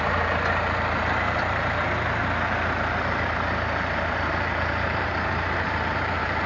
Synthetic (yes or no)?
yes